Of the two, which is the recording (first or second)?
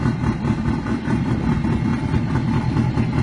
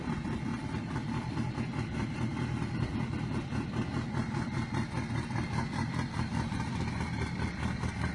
first